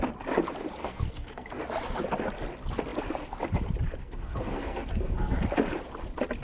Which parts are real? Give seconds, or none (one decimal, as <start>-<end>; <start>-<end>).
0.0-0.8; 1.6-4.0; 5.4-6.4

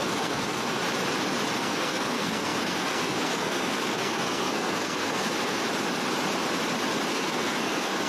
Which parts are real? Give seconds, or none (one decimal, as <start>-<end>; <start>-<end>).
0.8-1.6; 5.6-7.1

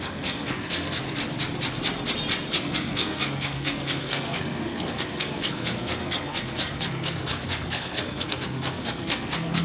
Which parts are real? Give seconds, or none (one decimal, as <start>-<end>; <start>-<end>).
1.0-2.6

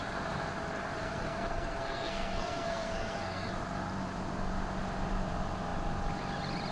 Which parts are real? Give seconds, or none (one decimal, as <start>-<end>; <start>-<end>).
0.0-1.0; 3.5-6.7

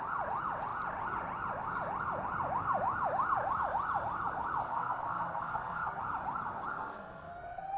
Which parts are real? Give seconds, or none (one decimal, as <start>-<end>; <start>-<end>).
0.0-4.6; 6.0-6.7

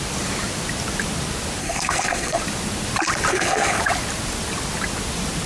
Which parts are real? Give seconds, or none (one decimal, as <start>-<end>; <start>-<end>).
0.0-1.6; 2.4-3.3; 3.8-5.5

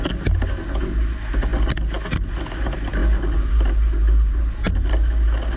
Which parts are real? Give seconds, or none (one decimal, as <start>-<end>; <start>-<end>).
0.0-5.6